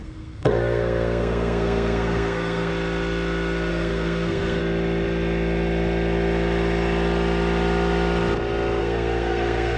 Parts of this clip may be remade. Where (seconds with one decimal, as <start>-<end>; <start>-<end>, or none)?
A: 0.0-2.7; 3.7-4.6; 8.8-9.8